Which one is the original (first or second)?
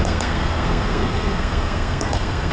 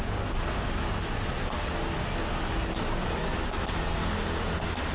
second